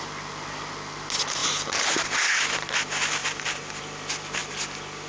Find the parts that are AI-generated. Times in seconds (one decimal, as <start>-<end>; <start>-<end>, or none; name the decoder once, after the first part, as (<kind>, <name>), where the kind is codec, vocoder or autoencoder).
1.4-2.3 (vocoder, BigVGAN v2); 3.2-3.8